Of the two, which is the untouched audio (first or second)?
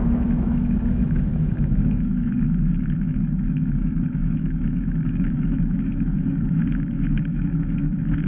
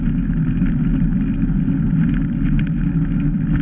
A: second